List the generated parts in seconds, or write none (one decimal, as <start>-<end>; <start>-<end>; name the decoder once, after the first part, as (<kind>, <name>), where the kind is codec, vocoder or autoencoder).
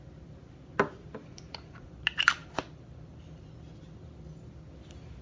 1.2-1.9 (vocoder, Vocos)